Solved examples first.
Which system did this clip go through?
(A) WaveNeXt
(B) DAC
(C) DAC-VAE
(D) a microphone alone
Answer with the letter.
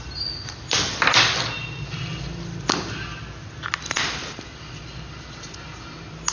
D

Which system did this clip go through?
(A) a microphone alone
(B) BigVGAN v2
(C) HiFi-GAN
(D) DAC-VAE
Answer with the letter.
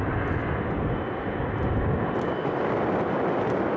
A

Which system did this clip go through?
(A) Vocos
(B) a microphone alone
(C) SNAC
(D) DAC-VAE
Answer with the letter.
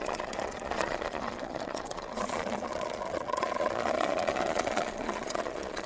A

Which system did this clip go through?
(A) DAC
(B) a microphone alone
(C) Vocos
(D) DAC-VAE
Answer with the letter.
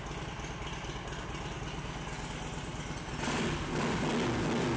B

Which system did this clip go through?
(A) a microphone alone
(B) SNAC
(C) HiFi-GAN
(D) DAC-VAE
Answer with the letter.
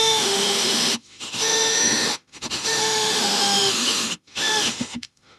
D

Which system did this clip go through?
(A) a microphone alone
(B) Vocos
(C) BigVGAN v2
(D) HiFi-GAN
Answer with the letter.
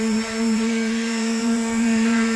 C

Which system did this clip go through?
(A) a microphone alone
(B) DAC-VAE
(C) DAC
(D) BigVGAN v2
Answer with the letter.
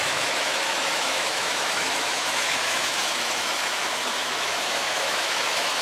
B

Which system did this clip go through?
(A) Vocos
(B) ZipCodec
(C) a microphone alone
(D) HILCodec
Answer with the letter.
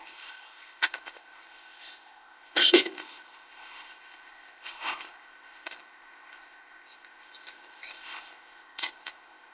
B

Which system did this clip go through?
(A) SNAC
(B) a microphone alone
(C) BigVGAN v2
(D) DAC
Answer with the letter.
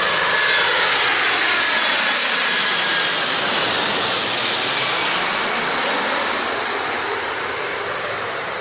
B